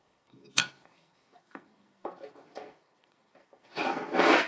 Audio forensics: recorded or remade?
remade